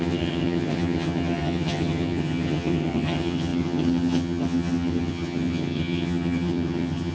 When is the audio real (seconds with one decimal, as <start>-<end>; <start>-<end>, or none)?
none